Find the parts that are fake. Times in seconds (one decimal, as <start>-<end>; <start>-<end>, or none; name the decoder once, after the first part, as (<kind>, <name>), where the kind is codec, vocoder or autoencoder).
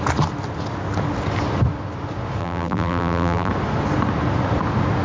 2.4-3.5 (vocoder, BigVGAN v2)